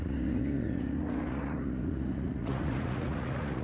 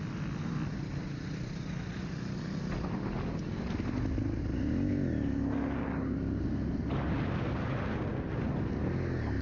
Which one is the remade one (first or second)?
first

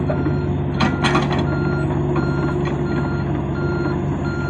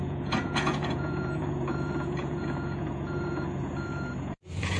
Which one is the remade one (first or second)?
second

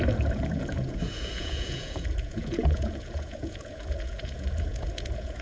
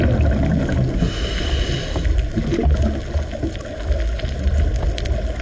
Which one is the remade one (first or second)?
first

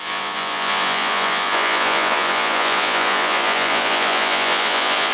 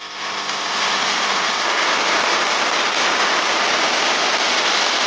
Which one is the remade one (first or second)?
first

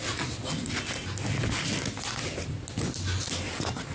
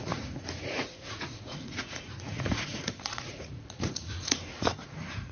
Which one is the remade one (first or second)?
second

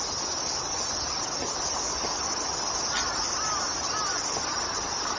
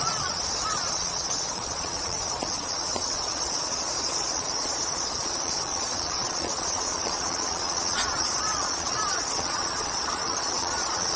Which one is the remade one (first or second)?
second